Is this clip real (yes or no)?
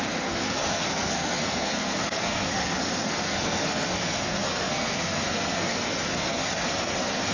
no